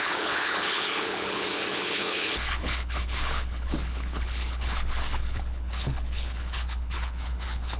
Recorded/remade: remade